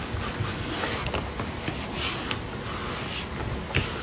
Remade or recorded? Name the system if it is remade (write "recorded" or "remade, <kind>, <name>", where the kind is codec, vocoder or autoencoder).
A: recorded